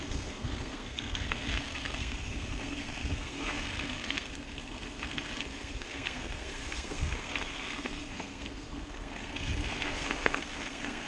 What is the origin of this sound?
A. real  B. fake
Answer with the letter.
B